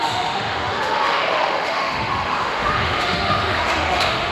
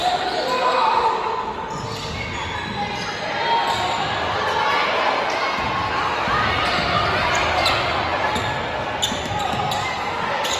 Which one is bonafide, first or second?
second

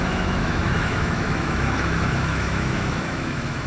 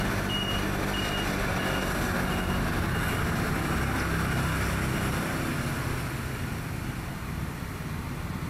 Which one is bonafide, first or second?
second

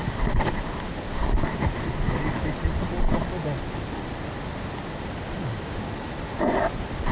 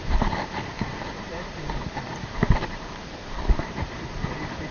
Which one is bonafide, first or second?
first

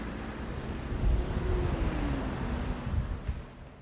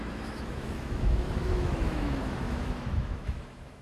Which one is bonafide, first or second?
first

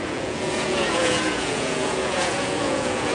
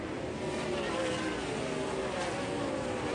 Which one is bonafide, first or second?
second